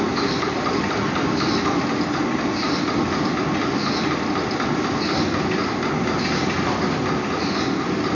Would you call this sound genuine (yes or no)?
yes